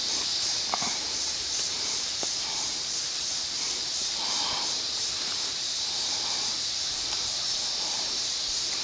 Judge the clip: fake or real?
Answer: fake